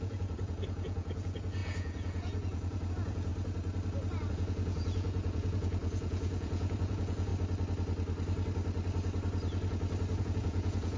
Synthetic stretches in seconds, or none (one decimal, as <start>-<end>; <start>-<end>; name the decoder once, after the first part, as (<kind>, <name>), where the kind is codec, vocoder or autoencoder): 0.0-3.3 (vocoder, Vocos); 4.3-7.3; 10.2-11.0